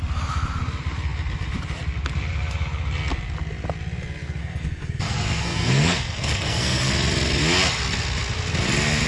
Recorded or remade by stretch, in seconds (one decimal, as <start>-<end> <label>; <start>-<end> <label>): 0.0-4.4 recorded; 4.4-6.9 remade; 6.9-9.1 recorded